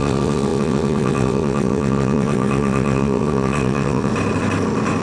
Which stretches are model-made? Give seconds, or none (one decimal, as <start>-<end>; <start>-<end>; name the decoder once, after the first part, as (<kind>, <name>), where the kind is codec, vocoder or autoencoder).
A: 0.0-4.1 (vocoder, WaveNeXt)